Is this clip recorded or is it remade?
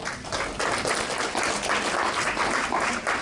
recorded